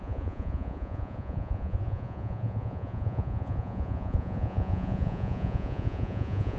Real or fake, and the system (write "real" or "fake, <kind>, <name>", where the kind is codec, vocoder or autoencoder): fake, vocoder, Vocos